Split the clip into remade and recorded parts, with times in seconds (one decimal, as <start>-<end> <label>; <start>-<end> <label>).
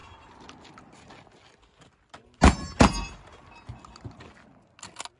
0.0-5.2 recorded